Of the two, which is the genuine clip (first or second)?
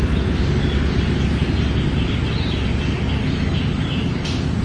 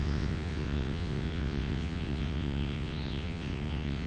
first